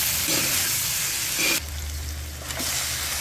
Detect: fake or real real